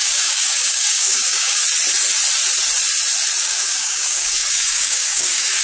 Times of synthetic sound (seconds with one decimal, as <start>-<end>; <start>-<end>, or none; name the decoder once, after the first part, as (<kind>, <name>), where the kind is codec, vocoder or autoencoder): 0.0-1.6 (codec, DAC); 3.4-5.6